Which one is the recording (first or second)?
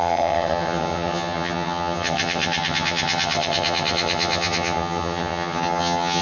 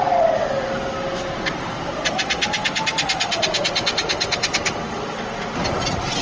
second